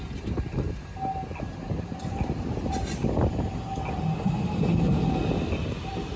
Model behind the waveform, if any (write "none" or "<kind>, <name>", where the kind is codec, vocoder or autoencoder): none